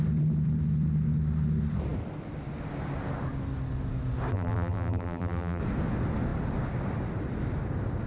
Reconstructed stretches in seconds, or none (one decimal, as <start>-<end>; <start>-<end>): 4.3-5.6